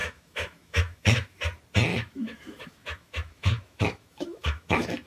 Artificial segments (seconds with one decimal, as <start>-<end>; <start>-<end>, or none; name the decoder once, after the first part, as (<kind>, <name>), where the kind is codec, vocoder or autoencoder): 0.0-1.4 (autoencoder, DAC-VAE); 1.9-5.1